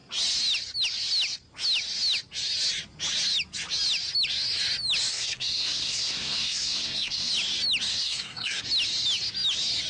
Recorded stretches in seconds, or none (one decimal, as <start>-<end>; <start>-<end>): 0.0-5.1; 7.3-7.9; 8.6-9.9